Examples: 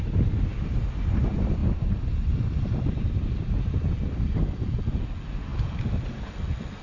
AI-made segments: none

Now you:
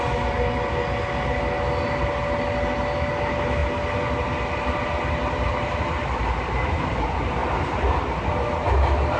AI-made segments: none

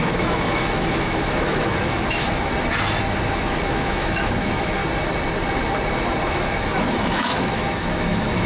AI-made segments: 0.0-2.5 (autoencoder, DAC-VAE); 3.4-4.8; 6.3-8.5

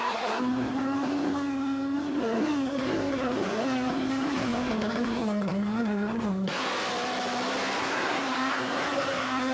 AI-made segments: 0.0-6.7 (codec, SNAC); 7.8-9.5

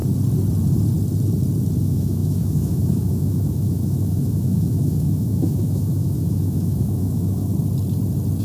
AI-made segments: 1.8-7.5 (autoencoder, DAC-VAE)

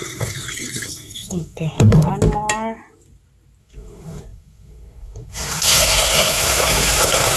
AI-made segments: 0.0-2.1 (codec, SNAC); 3.6-7.4